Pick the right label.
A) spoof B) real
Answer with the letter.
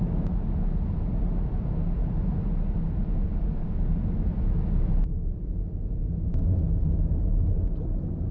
B